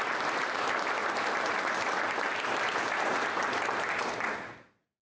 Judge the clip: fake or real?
real